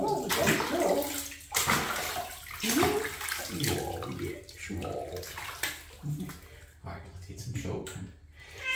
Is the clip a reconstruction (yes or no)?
no